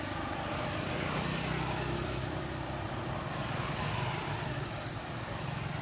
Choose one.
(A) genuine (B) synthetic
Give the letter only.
B